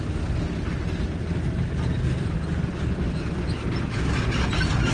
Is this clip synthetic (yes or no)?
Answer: no